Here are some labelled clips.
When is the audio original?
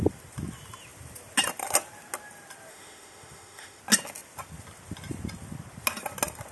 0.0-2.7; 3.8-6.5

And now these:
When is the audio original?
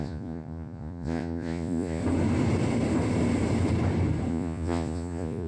2.0-4.3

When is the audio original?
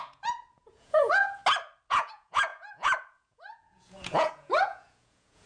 1.4-1.9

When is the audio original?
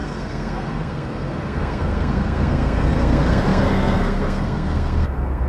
none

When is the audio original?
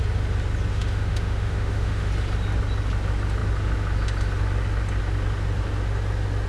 0.0-0.7; 2.1-6.5